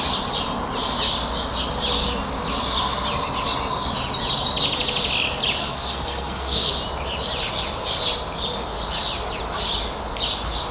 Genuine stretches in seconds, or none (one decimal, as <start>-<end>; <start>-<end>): 0.0-5.6; 6.7-10.7